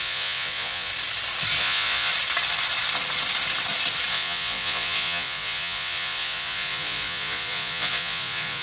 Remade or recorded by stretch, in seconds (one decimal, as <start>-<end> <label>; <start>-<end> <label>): 0.0-0.9 remade; 0.9-1.6 recorded; 1.6-2.1 remade; 2.1-4.1 recorded; 4.1-8.6 remade